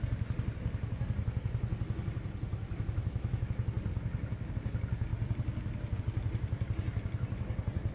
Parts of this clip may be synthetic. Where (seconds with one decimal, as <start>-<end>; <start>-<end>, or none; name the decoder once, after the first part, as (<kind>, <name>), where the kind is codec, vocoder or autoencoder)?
2.5-3.5 (autoencoder, DAC-VAE)